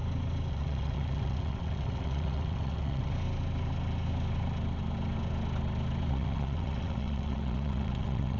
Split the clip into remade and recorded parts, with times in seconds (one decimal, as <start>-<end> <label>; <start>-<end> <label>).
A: 0.0-0.5 recorded; 0.5-3.1 remade; 3.1-6.1 recorded; 6.1-8.4 remade